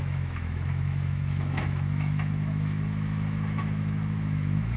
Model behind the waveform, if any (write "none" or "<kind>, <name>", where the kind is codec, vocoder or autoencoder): autoencoder, DAC-VAE